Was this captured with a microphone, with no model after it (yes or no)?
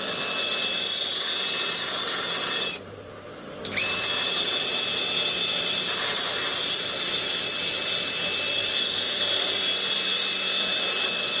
yes